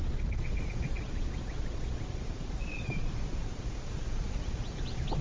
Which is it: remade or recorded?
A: remade